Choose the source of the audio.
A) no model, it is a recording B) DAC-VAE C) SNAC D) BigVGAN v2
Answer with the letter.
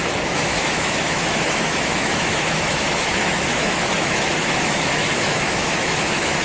B